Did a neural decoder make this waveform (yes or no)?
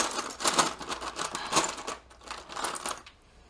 no